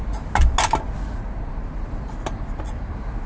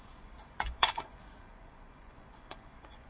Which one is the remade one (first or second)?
second